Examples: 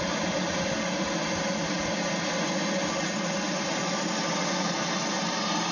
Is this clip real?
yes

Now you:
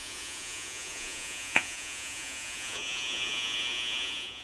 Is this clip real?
no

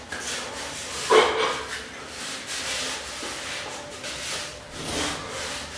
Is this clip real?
yes